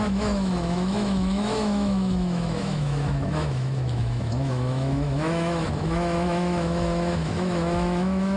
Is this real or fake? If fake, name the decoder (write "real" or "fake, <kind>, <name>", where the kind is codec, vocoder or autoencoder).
fake, autoencoder, DAC-VAE